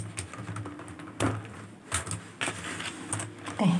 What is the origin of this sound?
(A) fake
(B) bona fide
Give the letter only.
B